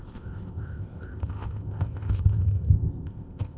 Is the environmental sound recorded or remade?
remade